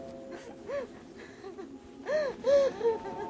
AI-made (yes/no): no